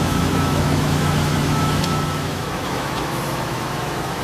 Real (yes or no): no